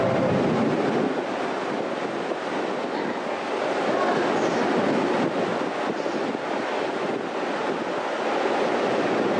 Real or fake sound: real